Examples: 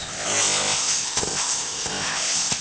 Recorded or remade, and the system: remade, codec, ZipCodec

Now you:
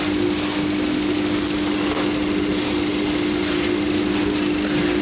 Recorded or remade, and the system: recorded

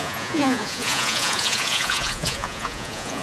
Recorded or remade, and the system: remade, vocoder, Vocos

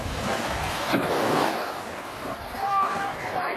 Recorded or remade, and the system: remade, codec, DAC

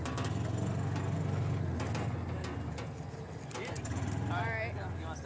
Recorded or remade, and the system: recorded